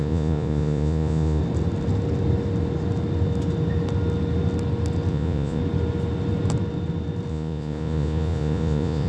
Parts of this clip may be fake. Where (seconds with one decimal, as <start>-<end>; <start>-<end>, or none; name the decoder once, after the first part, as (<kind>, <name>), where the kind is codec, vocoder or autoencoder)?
0.0-1.4 (vocoder, Vocos); 5.1-5.6; 7.3-9.1